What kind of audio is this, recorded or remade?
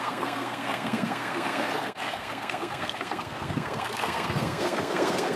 remade